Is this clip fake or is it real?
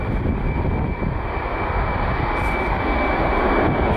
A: real